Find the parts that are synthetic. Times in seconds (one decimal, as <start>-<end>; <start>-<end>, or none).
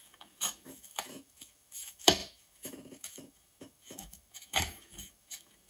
0.0-5.7